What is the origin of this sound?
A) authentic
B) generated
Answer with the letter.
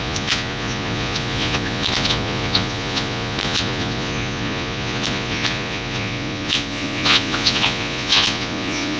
B